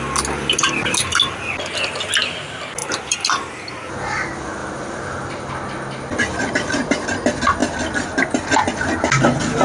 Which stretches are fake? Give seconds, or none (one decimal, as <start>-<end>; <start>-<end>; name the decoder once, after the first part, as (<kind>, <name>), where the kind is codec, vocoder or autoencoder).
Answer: 2.8-3.9 (vocoder, BigVGAN v2); 4.6-5.5